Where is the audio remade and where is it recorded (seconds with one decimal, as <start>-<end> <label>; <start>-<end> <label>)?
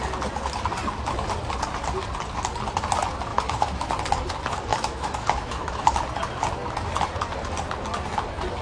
0.0-3.3 recorded; 3.3-3.9 remade; 3.9-4.7 recorded; 4.7-6.0 remade; 6.0-8.6 recorded